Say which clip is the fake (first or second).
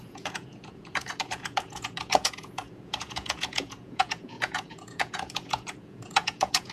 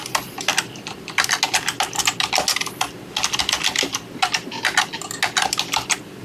first